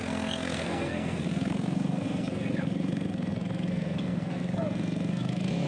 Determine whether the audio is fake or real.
fake